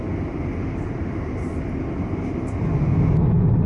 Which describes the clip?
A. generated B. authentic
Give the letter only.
B